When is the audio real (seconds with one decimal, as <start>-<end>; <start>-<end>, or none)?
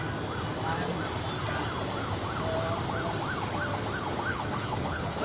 0.0-4.3